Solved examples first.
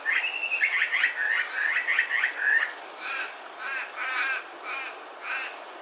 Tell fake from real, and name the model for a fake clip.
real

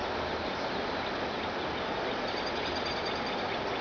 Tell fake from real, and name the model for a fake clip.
real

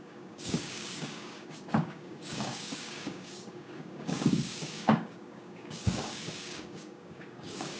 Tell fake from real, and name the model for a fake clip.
fake, codec, DAC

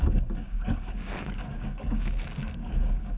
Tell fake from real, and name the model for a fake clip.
fake, codec, DAC